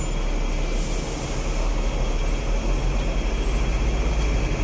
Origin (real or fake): real